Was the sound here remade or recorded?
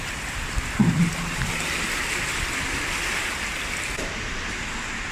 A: recorded